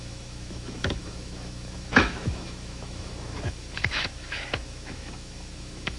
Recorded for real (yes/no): no